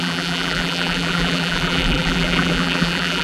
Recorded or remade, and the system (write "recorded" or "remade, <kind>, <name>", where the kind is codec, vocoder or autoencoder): remade, vocoder, BigVGAN v2